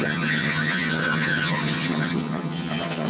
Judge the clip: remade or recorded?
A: remade